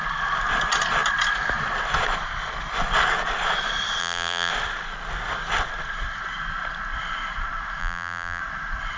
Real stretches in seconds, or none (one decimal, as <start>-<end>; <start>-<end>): 0.0-4.0; 4.5-7.8; 8.4-9.0